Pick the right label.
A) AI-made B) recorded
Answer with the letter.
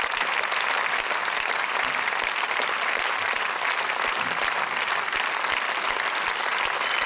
B